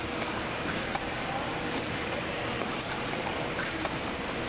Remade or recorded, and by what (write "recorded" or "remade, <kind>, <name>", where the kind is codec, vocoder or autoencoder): remade, vocoder, BigVGAN v2